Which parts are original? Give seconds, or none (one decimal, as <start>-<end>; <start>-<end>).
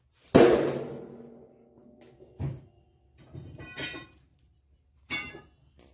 0.0-4.3; 5.3-5.9